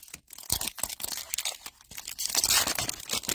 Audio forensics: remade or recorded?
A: recorded